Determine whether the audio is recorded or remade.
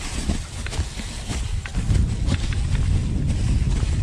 recorded